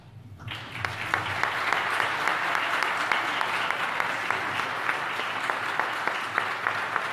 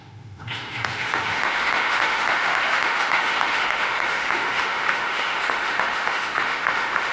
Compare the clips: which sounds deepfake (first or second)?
second